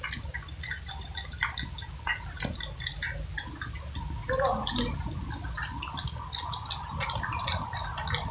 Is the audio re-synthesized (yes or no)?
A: no